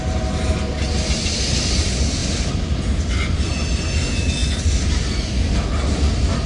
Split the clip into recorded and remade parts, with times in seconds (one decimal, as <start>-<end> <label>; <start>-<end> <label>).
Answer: 0.0-6.5 recorded